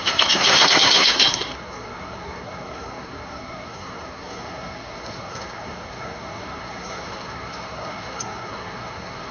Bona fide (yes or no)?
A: no